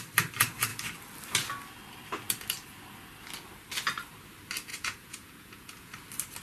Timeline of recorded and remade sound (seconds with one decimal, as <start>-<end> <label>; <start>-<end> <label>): 0.0-4.7 recorded; 4.7-5.9 remade; 5.9-6.4 recorded